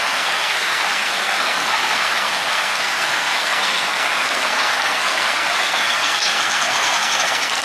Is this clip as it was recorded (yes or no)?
no